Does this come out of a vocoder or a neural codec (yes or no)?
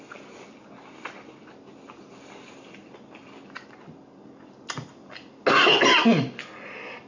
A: no